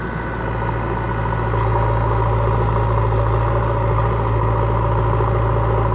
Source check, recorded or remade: recorded